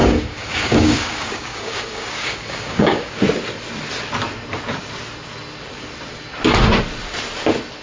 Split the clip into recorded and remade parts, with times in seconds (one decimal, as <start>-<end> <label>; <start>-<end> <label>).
0.0-3.1 remade; 3.1-7.8 recorded